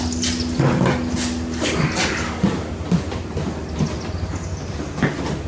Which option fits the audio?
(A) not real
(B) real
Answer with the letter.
B